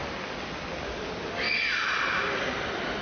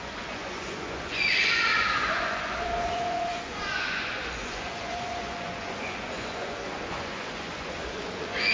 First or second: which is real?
first